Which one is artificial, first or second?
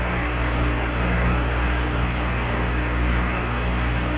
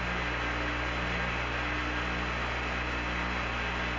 first